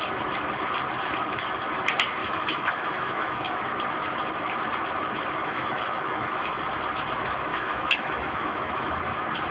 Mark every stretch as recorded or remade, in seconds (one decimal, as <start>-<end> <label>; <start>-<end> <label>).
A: 0.0-2.2 recorded; 2.2-3.6 remade; 3.6-5.4 recorded; 5.4-6.6 remade; 6.6-7.5 recorded; 7.5-9.0 remade; 9.0-9.5 recorded